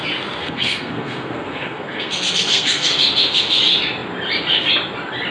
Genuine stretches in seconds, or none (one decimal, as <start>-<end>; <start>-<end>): 0.0-0.4; 3.6-5.3